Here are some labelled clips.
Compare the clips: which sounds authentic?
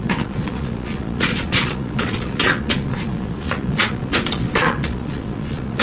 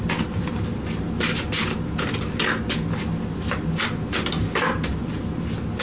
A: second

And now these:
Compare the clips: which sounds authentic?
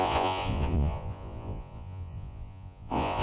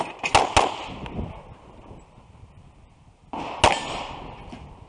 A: second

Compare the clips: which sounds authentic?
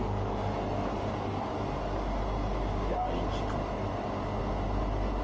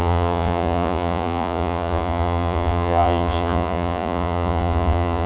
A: first